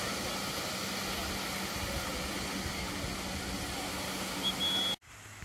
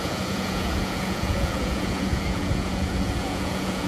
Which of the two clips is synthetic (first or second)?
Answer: second